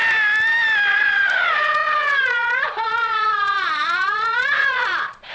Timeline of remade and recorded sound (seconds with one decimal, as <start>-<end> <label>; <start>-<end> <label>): 0.0-0.9 recorded; 0.9-5.3 remade